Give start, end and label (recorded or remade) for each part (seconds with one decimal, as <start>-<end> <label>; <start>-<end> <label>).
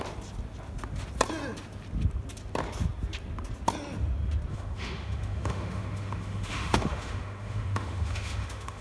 0.0-4.5 recorded; 4.5-8.8 remade